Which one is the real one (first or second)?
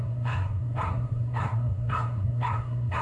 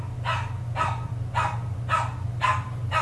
second